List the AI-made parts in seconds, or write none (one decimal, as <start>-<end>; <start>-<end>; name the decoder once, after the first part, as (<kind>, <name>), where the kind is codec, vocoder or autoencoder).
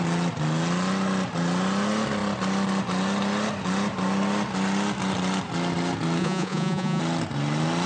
6.2-7.0 (vocoder, Vocos)